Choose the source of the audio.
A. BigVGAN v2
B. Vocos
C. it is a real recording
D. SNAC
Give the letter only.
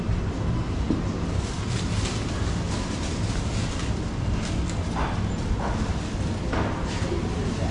C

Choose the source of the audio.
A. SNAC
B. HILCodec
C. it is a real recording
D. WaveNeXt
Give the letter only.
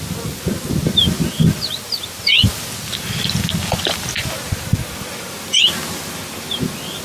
C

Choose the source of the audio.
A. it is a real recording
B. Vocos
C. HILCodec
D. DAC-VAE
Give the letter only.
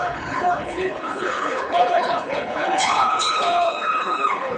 C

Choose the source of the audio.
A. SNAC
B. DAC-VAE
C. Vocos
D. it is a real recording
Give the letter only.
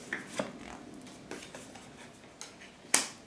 D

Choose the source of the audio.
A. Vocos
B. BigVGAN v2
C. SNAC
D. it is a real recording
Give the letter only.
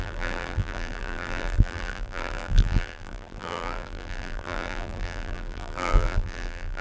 B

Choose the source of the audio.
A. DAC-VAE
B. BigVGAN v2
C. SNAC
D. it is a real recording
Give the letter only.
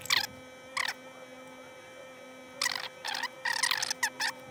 D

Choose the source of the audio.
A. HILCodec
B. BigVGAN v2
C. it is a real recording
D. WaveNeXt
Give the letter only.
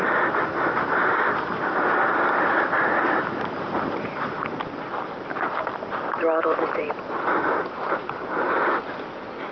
B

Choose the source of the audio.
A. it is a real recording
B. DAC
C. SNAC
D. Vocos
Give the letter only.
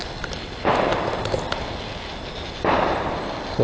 A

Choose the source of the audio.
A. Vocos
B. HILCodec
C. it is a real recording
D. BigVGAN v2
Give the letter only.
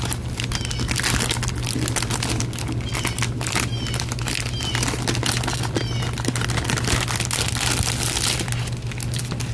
C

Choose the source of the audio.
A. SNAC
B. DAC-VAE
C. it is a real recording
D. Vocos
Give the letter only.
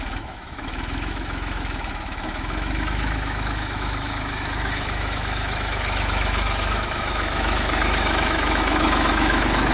B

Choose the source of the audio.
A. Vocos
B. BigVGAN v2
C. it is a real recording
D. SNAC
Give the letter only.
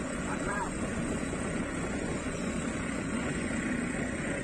A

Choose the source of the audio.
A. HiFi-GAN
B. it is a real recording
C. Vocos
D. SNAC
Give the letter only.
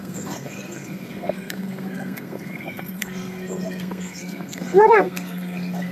D